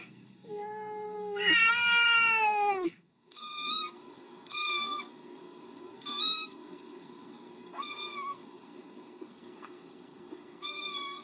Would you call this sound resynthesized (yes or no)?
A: yes